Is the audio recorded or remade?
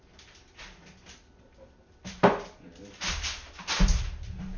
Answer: recorded